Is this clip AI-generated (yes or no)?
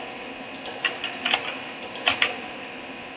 no